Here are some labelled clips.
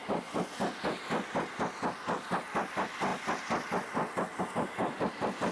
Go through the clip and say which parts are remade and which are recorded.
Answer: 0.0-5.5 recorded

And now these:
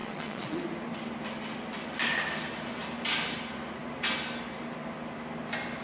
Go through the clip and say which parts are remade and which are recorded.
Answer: 0.0-0.6 remade; 0.6-5.8 recorded